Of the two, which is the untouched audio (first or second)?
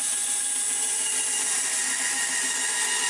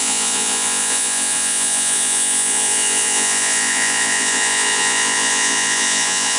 first